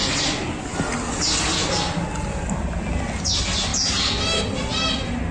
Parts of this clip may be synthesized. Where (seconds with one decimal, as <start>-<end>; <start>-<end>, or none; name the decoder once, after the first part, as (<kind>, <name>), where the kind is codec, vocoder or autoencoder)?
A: none